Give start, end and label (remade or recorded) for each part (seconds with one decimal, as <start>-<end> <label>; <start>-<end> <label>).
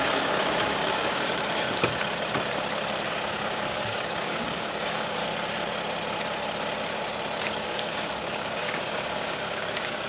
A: 0.0-1.9 remade; 1.9-3.1 recorded; 3.1-5.2 remade; 5.2-7.4 recorded; 7.4-10.1 remade